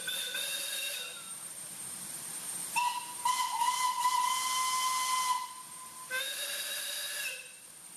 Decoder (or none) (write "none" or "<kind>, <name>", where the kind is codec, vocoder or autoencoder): none